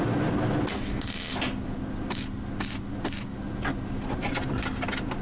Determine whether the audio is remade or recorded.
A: recorded